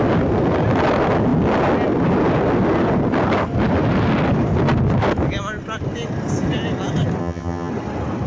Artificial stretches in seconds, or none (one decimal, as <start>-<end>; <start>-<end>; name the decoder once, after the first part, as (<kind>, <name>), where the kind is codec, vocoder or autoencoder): 7.2-7.7 (vocoder, HiFi-GAN)